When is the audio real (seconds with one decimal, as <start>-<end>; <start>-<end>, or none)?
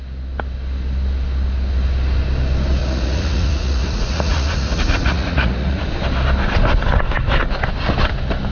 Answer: 0.0-2.8; 5.8-8.5